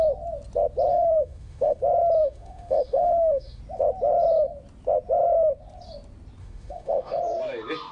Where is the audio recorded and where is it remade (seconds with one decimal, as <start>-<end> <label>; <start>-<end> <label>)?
0.0-0.9 recorded; 0.9-1.8 remade; 1.8-2.2 recorded; 2.2-3.6 remade; 3.6-6.4 recorded; 6.4-7.2 remade; 7.2-7.9 recorded